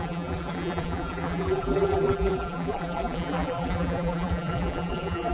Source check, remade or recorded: remade